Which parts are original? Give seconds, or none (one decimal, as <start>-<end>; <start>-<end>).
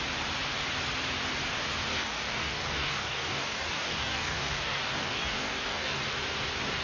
0.0-1.9; 6.0-6.8